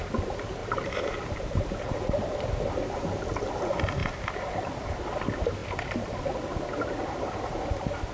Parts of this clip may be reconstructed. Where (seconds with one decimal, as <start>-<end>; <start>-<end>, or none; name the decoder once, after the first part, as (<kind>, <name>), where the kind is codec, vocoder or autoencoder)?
0.6-2.8 (vocoder, BigVGAN v2); 4.0-5.0; 5.6-6.2